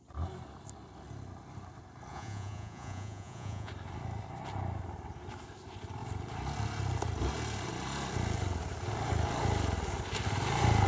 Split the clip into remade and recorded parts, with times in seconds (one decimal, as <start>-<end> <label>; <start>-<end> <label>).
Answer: 0.0-2.1 recorded; 2.1-3.7 remade; 3.7-10.9 recorded